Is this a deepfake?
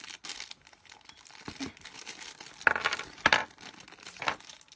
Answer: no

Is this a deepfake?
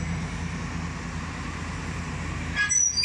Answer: no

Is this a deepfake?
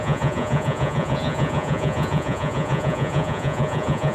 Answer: yes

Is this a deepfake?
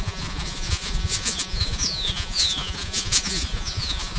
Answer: yes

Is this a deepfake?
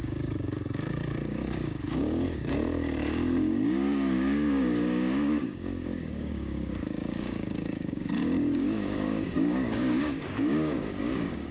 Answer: yes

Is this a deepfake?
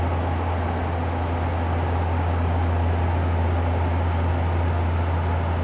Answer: no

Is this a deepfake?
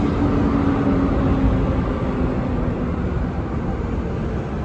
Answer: no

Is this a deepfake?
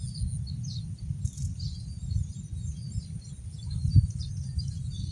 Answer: no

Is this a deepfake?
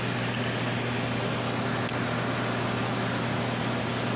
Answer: no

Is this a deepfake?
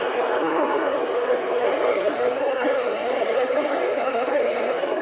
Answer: yes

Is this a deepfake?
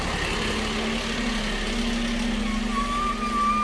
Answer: no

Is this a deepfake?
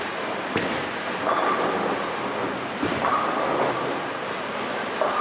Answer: no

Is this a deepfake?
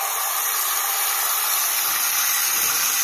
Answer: no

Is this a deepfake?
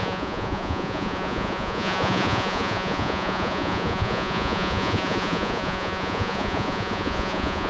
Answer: yes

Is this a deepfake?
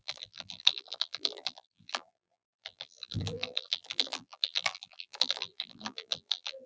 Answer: yes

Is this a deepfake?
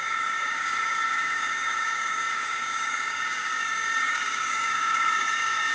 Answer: yes